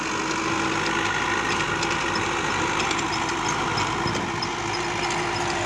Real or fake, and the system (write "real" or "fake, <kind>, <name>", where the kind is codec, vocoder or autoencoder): real